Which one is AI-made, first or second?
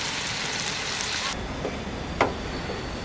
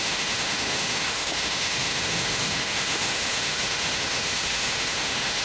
second